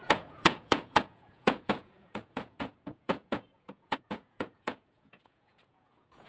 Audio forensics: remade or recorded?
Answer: remade